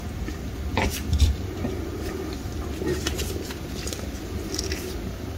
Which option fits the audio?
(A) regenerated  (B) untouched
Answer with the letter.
B